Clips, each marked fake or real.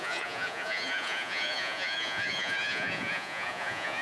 fake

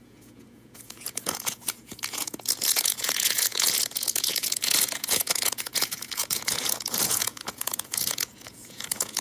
fake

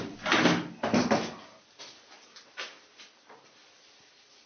real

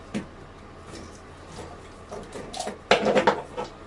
real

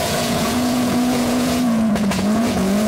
fake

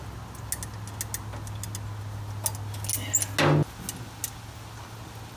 real